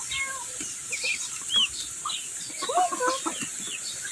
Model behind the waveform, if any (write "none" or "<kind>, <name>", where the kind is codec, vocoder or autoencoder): none